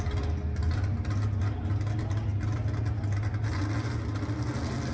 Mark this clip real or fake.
real